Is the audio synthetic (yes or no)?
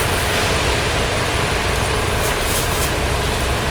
no